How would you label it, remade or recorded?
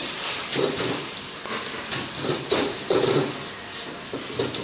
recorded